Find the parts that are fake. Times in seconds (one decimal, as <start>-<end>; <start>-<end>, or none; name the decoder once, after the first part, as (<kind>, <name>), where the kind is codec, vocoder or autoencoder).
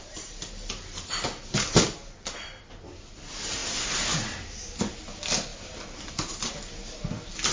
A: none